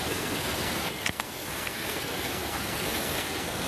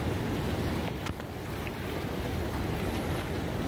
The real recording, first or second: second